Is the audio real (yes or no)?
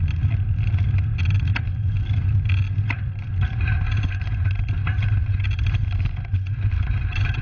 yes